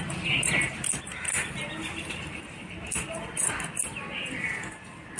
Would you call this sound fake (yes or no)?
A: no